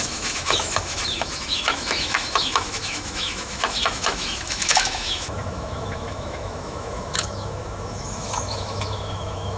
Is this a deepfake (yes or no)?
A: yes